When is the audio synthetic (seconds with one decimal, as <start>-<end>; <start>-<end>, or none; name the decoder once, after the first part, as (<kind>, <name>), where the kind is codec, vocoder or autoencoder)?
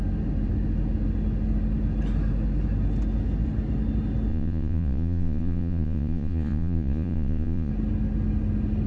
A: 4.3-7.7 (vocoder, Vocos)